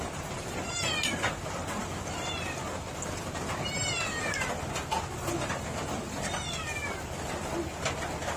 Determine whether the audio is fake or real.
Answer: real